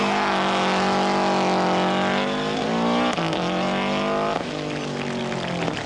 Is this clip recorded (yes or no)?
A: yes